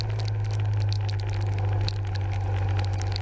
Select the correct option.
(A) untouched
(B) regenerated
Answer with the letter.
A